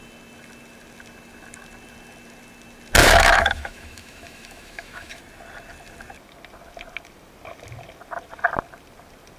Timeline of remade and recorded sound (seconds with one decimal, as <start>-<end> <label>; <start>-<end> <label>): 0.0-3.0 recorded; 3.0-5.2 remade; 5.2-9.4 recorded